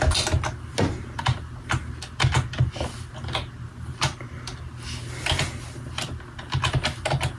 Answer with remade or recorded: recorded